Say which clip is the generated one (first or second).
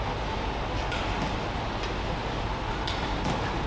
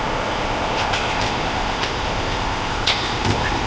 second